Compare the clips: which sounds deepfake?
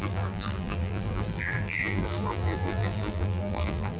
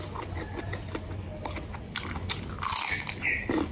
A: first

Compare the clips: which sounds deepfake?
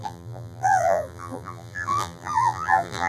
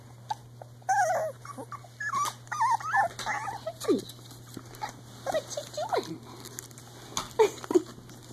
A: first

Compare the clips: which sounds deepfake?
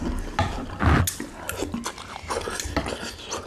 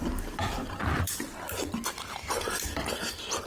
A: second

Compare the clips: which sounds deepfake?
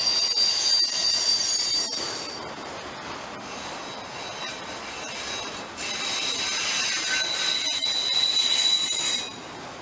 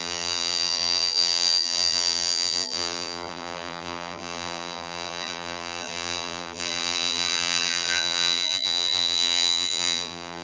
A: second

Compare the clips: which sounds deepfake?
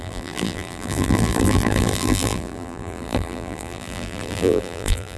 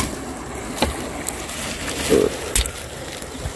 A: first